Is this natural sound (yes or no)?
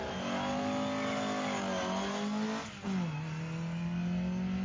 yes